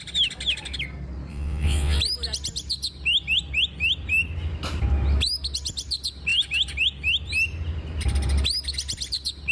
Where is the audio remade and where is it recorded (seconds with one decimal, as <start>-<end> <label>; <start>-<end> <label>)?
0.0-1.3 recorded; 1.3-2.0 remade; 2.0-9.5 recorded